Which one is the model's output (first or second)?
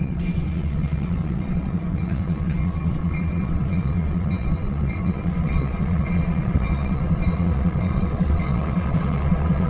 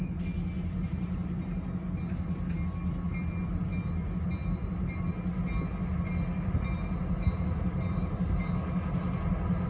first